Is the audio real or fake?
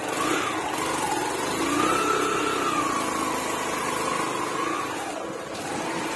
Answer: real